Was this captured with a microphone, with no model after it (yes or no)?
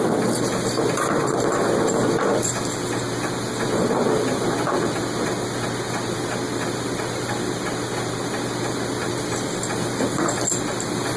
yes